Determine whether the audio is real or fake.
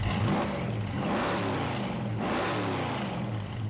real